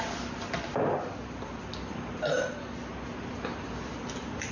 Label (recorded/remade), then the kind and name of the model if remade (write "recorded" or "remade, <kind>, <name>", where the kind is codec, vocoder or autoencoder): recorded